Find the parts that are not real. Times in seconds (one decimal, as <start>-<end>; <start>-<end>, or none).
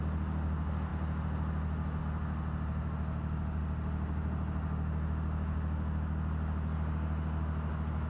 none